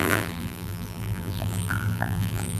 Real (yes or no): no